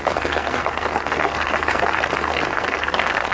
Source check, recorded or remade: remade